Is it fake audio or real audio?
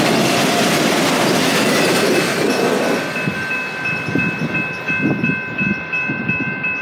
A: real